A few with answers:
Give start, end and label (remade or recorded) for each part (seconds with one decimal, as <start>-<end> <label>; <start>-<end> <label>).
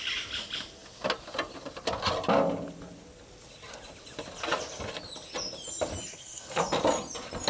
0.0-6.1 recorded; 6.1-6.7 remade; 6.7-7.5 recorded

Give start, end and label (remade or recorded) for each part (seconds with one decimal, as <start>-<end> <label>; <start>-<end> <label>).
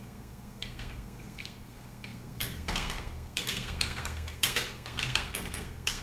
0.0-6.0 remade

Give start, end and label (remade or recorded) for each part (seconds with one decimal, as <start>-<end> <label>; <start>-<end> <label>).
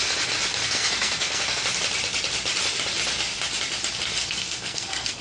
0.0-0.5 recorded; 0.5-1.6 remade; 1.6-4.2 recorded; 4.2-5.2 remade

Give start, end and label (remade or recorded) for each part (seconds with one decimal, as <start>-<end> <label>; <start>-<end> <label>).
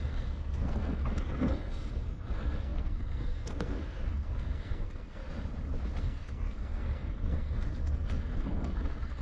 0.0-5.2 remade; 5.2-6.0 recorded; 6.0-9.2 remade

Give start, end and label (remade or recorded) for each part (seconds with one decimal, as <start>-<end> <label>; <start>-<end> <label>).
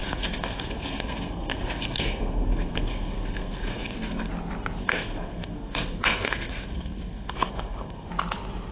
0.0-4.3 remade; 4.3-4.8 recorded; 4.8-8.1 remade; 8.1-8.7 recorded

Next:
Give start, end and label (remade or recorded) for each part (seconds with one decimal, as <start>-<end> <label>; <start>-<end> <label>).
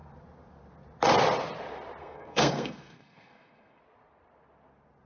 0.0-2.0 recorded; 2.0-3.8 remade; 3.8-5.1 recorded